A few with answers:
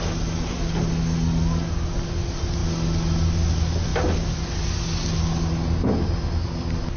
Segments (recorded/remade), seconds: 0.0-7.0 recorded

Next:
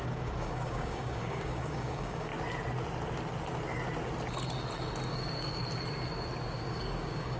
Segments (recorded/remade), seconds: 0.0-2.3 remade; 2.3-5.1 recorded; 5.1-5.6 remade; 5.6-6.6 recorded; 6.6-7.4 remade

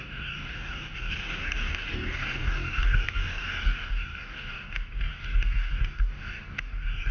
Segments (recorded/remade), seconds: 0.0-7.1 remade

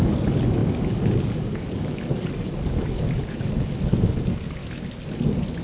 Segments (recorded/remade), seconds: 0.0-4.6 remade; 4.6-5.6 recorded

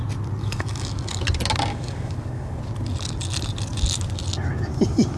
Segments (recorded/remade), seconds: 0.0-0.4 recorded; 0.4-1.2 remade; 1.2-1.7 recorded; 1.7-2.6 remade; 2.6-5.2 recorded

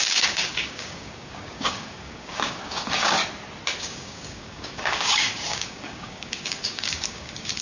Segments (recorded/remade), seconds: 0.0-3.2 remade; 3.2-3.8 recorded; 3.8-7.6 remade